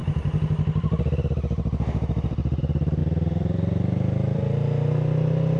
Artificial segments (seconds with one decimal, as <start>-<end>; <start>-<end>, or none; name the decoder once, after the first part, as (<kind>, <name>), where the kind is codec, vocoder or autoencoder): 0.0-2.6 (vocoder, BigVGAN v2); 3.0-4.4